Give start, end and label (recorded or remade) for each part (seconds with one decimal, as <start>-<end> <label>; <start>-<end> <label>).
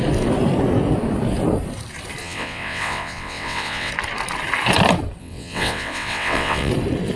0.0-2.2 recorded; 2.2-3.9 remade; 3.9-5.2 recorded; 5.2-6.7 remade; 6.7-7.2 recorded